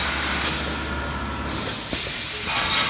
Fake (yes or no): no